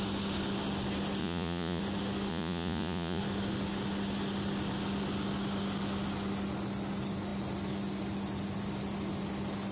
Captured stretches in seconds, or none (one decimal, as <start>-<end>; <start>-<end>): 0.0-1.2; 1.8-2.3; 3.2-9.7